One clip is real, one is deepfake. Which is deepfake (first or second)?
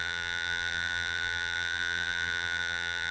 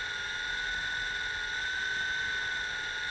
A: first